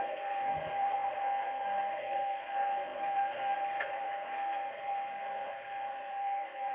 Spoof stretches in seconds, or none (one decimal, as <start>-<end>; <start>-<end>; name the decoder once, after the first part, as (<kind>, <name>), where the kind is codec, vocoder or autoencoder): 0.0-6.7 (codec, SNAC)